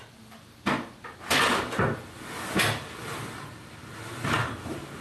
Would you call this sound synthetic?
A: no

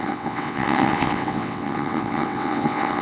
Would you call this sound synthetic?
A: yes